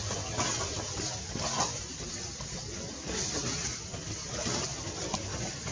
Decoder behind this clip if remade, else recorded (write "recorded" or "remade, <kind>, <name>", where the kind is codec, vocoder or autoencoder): recorded